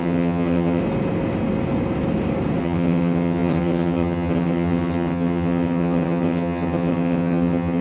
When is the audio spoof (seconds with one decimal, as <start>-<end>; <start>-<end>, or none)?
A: 0.0-0.8; 2.6-7.8